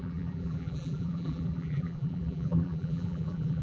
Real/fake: fake